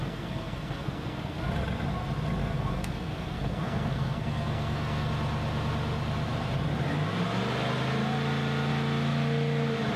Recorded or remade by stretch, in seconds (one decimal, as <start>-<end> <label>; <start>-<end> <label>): 0.0-1.5 remade; 1.5-2.4 recorded; 2.4-5.1 remade; 5.1-10.0 recorded